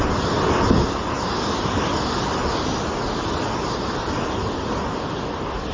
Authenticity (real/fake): real